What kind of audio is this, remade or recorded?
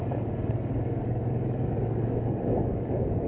remade